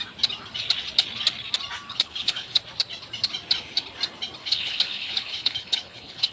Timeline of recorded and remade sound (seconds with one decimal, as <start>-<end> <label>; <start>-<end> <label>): 0.0-1.9 recorded; 1.9-2.6 remade; 2.6-4.4 recorded; 4.4-6.3 remade